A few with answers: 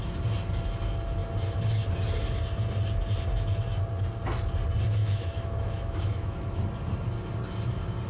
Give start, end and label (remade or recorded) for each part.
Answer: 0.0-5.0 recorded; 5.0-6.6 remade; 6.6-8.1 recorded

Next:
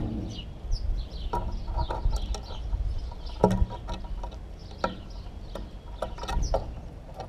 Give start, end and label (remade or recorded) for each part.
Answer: 0.0-7.3 recorded

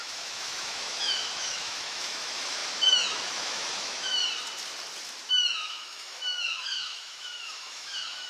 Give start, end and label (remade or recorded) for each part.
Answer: 0.0-4.2 remade; 4.2-5.3 recorded; 5.3-8.3 remade

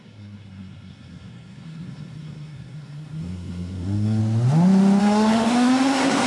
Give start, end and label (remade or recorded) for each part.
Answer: 0.0-4.2 remade; 4.2-5.0 recorded; 5.0-6.3 remade

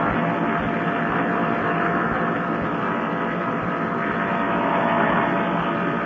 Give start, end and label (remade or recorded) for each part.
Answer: 0.0-6.1 recorded